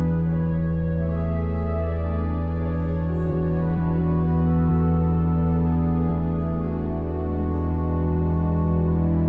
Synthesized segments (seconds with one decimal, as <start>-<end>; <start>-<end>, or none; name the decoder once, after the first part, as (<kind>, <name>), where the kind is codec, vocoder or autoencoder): 3.3-4.0 (vocoder, BigVGAN v2)